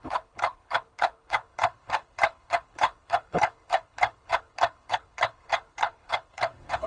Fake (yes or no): yes